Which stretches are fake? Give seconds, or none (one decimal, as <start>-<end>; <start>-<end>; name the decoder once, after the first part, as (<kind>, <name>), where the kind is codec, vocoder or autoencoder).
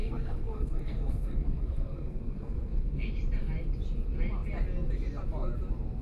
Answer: 0.0-3.1 (codec, SNAC)